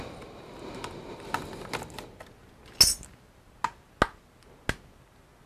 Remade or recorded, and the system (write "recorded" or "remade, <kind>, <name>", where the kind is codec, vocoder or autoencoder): recorded